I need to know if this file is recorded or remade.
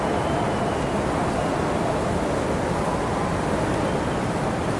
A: recorded